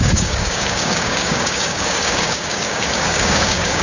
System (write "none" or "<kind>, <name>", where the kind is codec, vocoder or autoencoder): codec, DAC